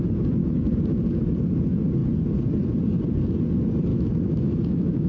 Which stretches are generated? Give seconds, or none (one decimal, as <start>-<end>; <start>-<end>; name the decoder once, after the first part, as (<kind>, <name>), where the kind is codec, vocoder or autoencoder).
0.4-1.0 (autoencoder, DAC-VAE); 3.9-5.1